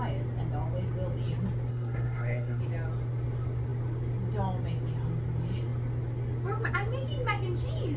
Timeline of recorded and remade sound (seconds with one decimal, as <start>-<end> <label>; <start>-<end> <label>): 0.0-1.7 recorded; 1.7-2.6 remade; 2.6-8.0 recorded